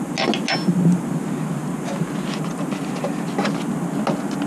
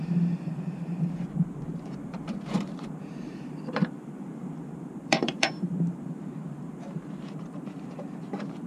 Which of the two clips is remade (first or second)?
second